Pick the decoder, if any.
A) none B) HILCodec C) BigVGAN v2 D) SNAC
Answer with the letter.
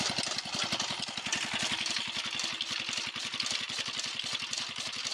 A